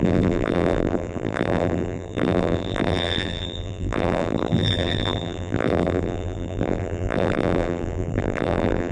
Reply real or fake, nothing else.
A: fake